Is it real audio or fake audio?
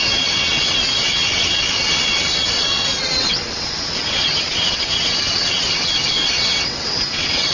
fake